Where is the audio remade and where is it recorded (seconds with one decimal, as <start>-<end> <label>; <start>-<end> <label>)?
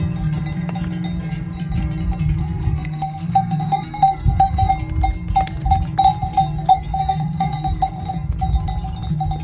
0.0-2.4 recorded; 2.4-4.7 remade; 4.7-6.7 recorded; 6.7-7.9 remade; 7.9-9.4 recorded